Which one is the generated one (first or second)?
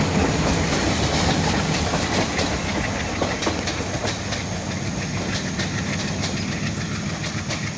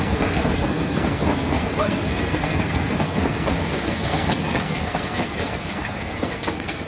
second